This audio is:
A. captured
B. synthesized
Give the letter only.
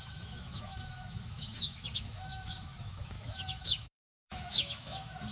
B